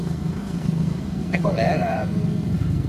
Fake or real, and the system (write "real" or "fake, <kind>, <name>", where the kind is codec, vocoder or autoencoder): fake, codec, SNAC